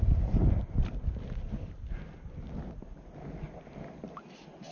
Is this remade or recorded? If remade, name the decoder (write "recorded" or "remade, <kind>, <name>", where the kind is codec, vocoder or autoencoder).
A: recorded